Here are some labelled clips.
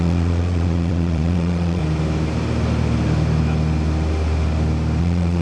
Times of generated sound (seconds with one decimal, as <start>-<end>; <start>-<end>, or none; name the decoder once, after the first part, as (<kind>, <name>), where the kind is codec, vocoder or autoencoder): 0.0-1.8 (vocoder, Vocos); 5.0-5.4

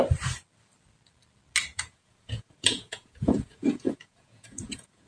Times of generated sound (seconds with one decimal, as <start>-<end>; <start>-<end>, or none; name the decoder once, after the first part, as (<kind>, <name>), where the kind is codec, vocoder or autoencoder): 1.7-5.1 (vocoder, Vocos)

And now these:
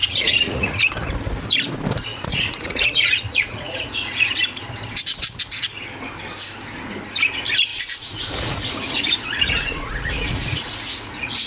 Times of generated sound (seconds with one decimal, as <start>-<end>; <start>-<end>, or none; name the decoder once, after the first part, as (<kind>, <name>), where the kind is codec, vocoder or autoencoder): 0.0-0.8 (vocoder, Vocos); 2.1-4.4; 7.7-11.5

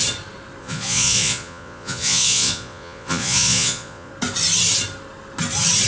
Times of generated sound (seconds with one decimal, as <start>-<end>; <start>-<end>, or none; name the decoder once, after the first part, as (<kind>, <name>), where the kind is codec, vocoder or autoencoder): 0.6-4.1 (vocoder, Vocos)

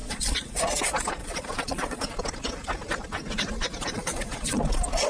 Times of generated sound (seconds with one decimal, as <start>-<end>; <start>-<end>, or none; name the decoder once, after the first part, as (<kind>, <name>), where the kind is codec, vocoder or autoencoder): 0.0-0.6 (vocoder, Vocos); 1.2-2.1; 3.9-4.6

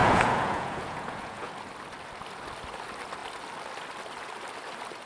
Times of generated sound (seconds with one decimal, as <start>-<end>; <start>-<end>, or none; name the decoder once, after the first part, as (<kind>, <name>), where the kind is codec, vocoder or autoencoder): 0.0-1.5 (vocoder, Vocos)

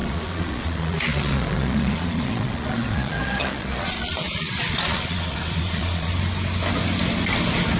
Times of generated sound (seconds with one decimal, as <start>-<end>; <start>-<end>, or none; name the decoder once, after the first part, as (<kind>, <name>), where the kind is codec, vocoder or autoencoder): 0.0-6.1 (vocoder, Vocos)

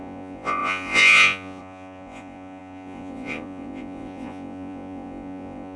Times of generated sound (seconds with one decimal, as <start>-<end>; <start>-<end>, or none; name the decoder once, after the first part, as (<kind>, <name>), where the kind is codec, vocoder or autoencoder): 0.0-5.8 (vocoder, Vocos)